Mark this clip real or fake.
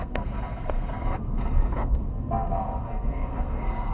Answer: fake